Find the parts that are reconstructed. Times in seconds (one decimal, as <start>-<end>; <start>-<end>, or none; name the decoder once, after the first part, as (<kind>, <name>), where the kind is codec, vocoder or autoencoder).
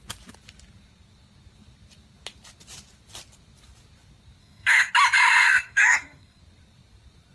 4.4-4.9 (codec, SNAC); 5.4-6.4